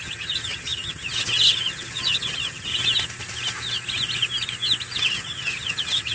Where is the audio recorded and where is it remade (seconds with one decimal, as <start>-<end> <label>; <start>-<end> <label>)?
0.0-2.7 remade; 2.7-5.0 recorded; 5.0-6.1 remade